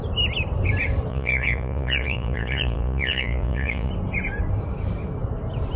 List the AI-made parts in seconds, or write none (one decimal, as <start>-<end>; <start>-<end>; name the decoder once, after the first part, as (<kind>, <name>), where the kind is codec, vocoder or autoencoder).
1.1-3.9 (vocoder, Vocos)